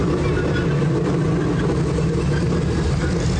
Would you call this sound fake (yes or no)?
no